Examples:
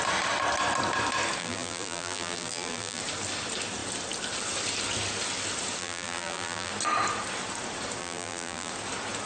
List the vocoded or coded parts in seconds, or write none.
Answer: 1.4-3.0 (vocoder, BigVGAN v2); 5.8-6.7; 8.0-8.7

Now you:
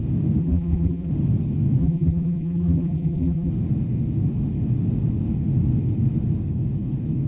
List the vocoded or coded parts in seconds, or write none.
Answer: 0.4-1.1 (vocoder, BigVGAN v2); 1.8-3.5